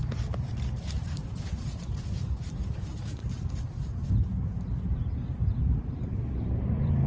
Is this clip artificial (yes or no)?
yes